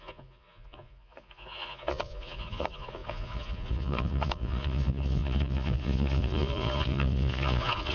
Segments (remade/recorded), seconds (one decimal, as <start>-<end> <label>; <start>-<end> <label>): 0.0-7.9 remade

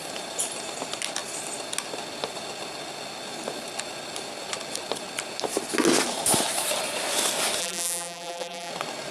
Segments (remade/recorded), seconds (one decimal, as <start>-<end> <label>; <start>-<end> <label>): 0.0-7.6 recorded; 7.6-8.7 remade; 8.7-9.1 recorded

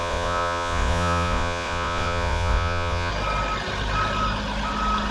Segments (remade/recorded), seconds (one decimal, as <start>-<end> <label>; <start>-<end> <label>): 0.0-3.1 remade; 3.1-5.1 recorded

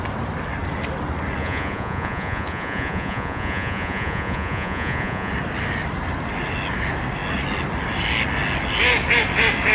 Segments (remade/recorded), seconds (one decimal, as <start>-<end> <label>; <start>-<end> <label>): 0.0-1.4 recorded; 1.4-5.3 remade; 5.3-9.7 recorded

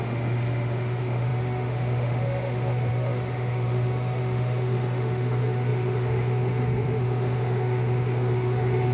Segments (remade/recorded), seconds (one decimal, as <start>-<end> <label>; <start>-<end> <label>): 0.0-8.9 remade

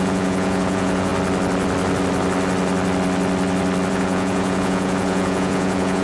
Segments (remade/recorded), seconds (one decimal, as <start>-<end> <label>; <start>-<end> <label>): 0.0-1.1 remade; 1.1-3.9 recorded; 3.9-6.0 remade

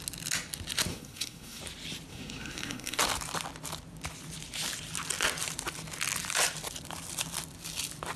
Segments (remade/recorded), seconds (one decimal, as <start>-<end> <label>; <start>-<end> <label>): 0.0-0.9 recorded; 0.9-1.6 remade; 1.6-2.1 recorded; 2.1-3.0 remade; 3.0-8.2 recorded